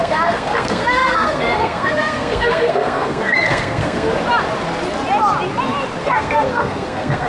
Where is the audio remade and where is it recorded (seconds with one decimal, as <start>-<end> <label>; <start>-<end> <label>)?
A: 0.0-4.1 remade; 4.1-6.0 recorded; 6.0-7.3 remade